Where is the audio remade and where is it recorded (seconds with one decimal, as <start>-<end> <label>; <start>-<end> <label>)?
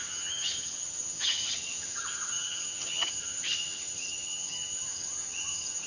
0.0-5.9 remade